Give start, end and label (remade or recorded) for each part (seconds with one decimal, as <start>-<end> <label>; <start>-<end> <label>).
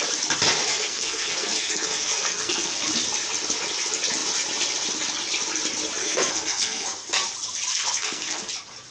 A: 0.0-0.7 recorded; 0.7-2.9 remade; 2.9-6.0 recorded; 6.0-7.2 remade; 7.2-7.7 recorded; 7.7-8.5 remade; 8.5-8.9 recorded